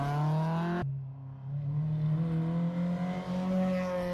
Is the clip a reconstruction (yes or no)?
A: no